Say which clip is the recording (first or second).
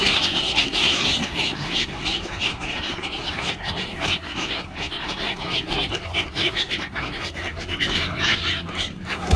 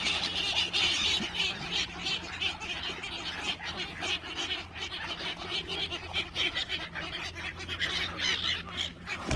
second